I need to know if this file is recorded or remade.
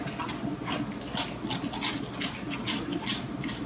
recorded